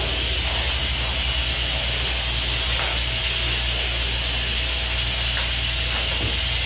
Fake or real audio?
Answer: real